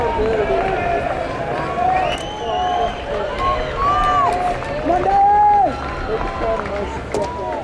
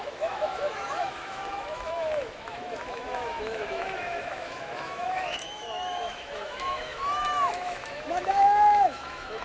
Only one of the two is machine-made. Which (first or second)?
second